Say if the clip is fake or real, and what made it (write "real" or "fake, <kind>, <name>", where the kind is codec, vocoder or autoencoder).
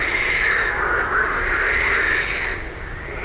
real